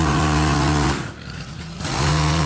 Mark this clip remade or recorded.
remade